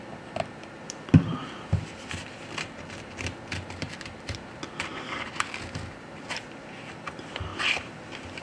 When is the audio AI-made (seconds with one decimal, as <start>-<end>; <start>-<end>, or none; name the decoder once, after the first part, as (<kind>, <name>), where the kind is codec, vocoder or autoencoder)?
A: 0.0-1.4 (vocoder, BigVGAN v2); 3.9-4.9; 6.6-8.4

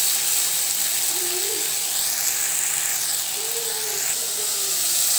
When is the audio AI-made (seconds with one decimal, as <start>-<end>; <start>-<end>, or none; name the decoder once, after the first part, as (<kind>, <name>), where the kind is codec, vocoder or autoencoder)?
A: none

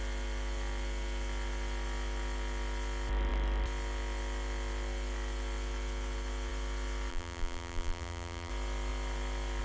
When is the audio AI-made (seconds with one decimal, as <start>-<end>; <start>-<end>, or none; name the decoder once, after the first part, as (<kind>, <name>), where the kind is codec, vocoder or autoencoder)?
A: 7.1-8.5 (vocoder, BigVGAN v2)